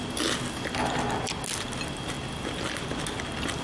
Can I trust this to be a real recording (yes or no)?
yes